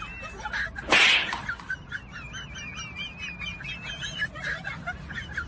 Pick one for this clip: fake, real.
real